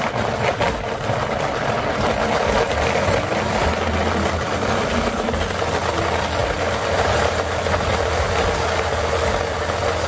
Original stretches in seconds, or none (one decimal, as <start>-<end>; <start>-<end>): 0.0-10.1

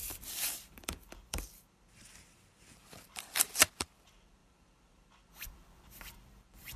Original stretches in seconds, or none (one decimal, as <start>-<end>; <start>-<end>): none

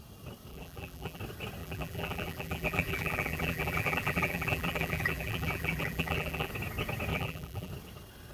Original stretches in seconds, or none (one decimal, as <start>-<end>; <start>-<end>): 0.0-0.5; 1.2-1.6; 6.5-7.1; 7.7-8.3

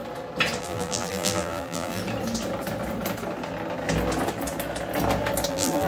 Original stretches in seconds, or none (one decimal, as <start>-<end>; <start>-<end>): 0.0-0.6; 2.0-5.5

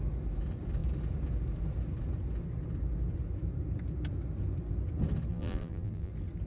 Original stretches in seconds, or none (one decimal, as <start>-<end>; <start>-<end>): 0.0-5.3; 6.1-6.5

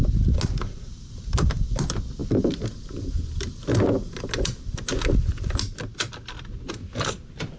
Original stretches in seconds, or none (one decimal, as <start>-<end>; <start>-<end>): 0.0-7.6

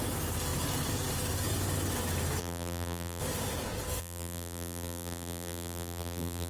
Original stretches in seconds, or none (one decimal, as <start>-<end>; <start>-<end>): 0.0-2.4; 3.2-4.0

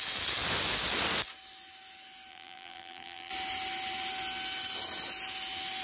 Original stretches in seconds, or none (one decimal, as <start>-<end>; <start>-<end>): 0.0-2.3; 3.3-5.8